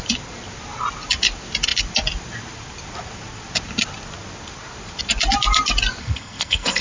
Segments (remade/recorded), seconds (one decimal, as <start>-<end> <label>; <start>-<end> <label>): 0.0-6.0 recorded; 6.0-6.8 remade